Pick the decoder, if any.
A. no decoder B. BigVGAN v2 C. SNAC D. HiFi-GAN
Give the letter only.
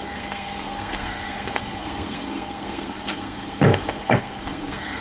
C